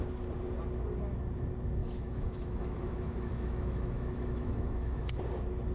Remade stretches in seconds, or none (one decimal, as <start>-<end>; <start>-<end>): 1.8-5.2